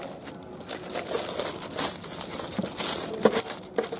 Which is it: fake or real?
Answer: real